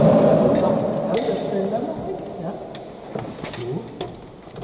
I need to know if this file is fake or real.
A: real